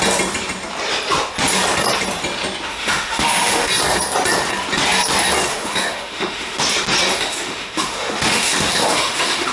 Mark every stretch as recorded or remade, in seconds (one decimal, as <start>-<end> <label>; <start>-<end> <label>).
0.0-2.7 recorded; 2.7-3.7 remade; 3.7-5.5 recorded; 5.5-6.6 remade; 6.6-7.1 recorded; 7.1-9.5 remade